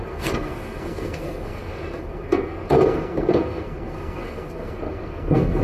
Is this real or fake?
fake